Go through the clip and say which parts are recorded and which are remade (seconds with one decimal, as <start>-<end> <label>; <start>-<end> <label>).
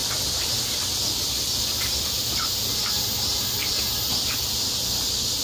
0.0-0.6 remade; 0.6-1.7 recorded; 1.7-2.3 remade; 2.3-5.4 recorded